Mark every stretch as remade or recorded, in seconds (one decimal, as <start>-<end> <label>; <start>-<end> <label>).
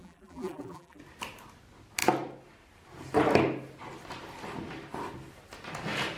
0.0-1.0 remade; 1.0-6.2 recorded